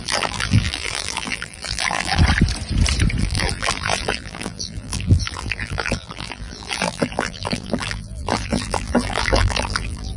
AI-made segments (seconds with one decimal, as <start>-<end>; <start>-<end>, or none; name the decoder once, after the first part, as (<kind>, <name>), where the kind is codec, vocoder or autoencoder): 0.0-2.2 (vocoder, BigVGAN v2); 3.2-10.2